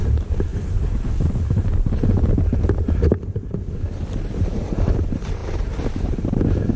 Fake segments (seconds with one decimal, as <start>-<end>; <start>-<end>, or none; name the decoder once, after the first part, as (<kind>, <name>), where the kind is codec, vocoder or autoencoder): 0.0-0.5 (vocoder, BigVGAN v2); 4.2-6.8